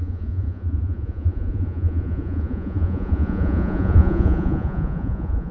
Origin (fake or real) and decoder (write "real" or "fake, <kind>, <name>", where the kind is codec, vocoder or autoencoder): fake, vocoder, Vocos